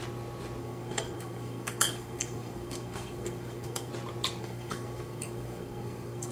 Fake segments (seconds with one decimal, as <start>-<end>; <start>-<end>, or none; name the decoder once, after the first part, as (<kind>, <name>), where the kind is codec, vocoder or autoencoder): 0.6-3.9 (codec, SNAC); 4.4-6.3